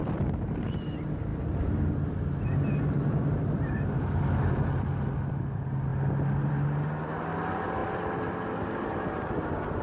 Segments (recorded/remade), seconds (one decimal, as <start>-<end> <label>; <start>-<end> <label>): 0.0-9.8 recorded